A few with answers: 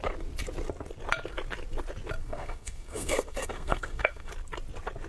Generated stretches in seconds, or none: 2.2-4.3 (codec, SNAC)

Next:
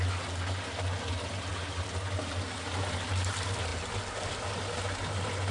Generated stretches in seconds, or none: none